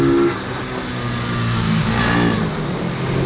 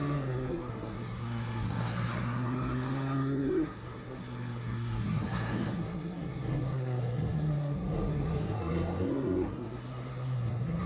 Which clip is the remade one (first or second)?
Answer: second